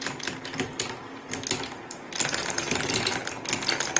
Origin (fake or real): real